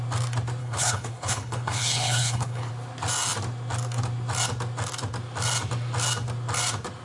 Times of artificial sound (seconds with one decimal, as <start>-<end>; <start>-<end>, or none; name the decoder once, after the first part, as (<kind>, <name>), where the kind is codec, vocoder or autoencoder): 0.6-2.7 (codec, HILCodec)